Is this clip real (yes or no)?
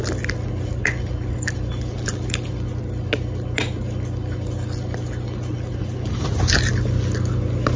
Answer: yes